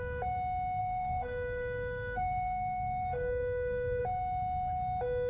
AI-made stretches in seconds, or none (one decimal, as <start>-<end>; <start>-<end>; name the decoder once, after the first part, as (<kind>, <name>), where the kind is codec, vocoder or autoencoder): 0.8-4.0 (codec, SNAC)